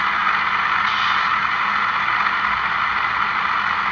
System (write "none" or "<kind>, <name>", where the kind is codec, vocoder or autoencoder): none